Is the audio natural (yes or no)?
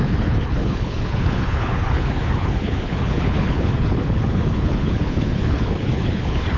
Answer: no